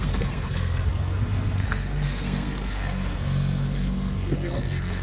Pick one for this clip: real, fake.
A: fake